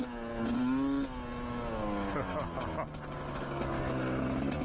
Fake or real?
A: real